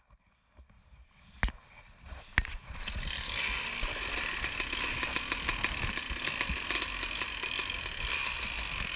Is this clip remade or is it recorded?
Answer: recorded